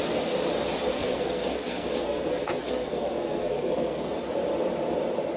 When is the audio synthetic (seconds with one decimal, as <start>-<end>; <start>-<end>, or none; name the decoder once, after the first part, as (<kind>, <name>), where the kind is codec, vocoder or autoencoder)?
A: 0.9-4.1 (codec, SNAC)